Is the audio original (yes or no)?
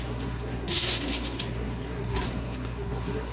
no